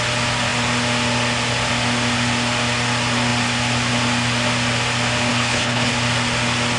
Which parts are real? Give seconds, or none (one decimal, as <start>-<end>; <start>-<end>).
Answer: 0.0-5.3; 5.9-6.8